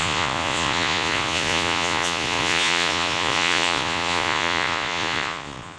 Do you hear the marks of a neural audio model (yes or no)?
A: yes